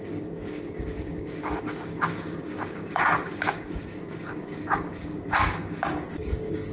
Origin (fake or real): fake